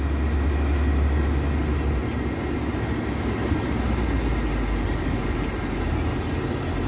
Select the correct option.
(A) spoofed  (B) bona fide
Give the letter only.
B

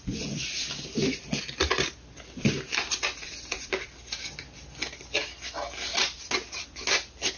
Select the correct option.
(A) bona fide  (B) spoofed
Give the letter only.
A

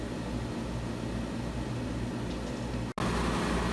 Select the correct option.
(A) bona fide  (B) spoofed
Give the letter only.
A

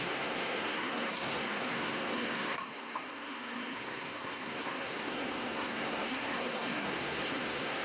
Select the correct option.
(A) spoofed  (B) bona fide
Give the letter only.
A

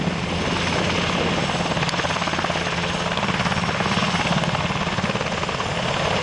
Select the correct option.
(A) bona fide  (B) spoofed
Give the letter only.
A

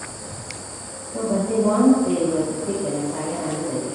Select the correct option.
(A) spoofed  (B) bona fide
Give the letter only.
B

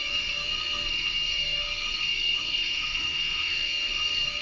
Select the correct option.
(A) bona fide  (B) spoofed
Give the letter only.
B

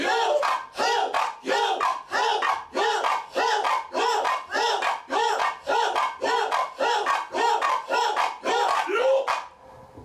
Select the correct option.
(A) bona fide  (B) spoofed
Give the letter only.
A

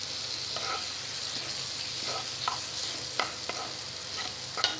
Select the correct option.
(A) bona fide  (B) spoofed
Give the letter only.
A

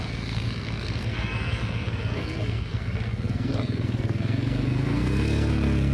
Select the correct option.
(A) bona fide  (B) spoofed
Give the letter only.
B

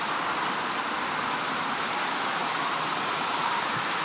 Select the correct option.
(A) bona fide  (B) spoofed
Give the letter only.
A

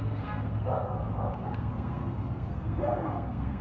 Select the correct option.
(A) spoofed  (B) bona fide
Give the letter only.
A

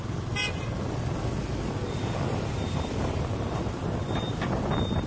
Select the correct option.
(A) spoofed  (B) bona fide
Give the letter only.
B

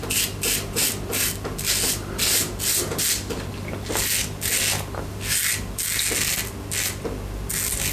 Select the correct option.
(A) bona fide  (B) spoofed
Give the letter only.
A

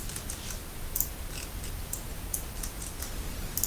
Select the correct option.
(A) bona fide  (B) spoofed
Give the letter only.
A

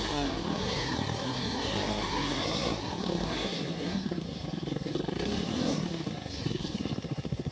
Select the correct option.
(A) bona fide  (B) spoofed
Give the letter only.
B